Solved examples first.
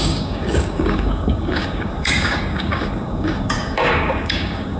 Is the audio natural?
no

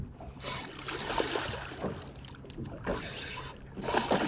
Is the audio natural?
yes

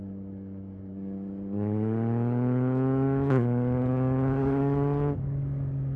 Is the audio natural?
no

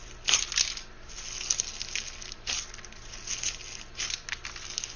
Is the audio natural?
yes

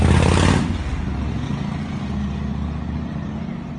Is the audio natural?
yes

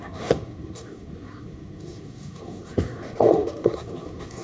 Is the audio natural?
no